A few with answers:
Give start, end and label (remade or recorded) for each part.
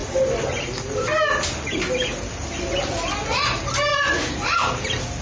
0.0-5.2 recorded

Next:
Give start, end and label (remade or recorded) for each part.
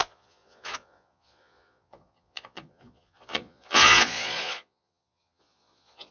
0.0-6.1 remade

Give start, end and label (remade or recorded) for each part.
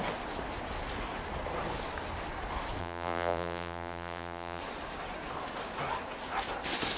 0.0-2.8 recorded; 2.8-4.6 remade; 4.6-7.0 recorded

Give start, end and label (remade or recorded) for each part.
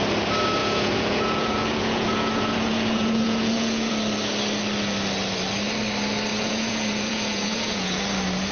0.0-0.6 recorded; 0.6-3.9 remade; 3.9-6.3 recorded; 6.3-8.0 remade; 8.0-8.5 recorded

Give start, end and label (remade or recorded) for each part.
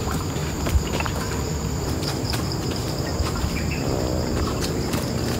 0.0-0.4 recorded; 0.4-3.2 remade; 3.2-5.4 recorded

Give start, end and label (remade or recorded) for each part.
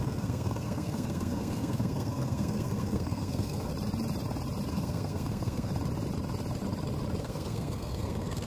0.0-3.7 remade; 3.7-4.7 recorded; 4.7-5.7 remade; 5.7-7.2 recorded; 7.2-8.5 remade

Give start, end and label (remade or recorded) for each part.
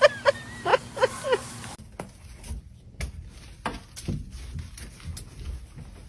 0.0-6.1 recorded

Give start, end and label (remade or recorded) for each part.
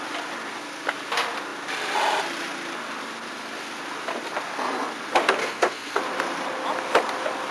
0.0-5.4 recorded; 5.4-6.0 remade; 6.0-7.5 recorded